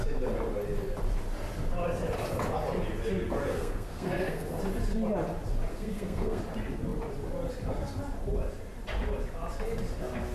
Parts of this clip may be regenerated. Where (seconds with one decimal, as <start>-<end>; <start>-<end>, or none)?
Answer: 3.5-4.6; 5.7-6.4

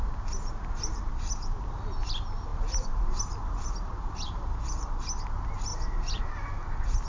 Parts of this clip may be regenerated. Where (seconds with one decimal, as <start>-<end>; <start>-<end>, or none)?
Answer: 2.5-4.9; 5.7-6.2

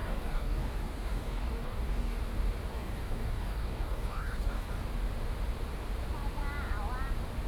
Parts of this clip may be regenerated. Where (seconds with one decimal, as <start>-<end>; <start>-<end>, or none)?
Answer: 0.0-2.2; 2.7-4.7

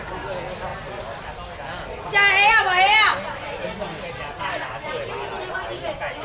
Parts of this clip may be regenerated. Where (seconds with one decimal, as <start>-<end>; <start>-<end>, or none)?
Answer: none

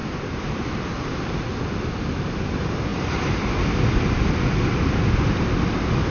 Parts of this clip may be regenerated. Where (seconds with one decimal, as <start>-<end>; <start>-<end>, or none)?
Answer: none